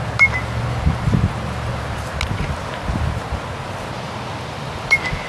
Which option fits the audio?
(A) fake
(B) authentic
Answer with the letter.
B